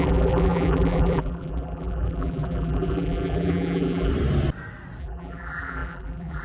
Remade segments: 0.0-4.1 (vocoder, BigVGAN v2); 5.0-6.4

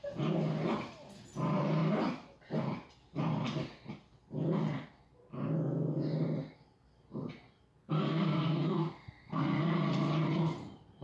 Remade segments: 7.8-9.6 (codec, SNAC)